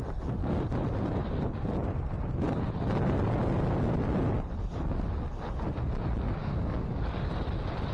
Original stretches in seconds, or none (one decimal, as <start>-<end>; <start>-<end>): 0.0-6.4; 7.3-7.9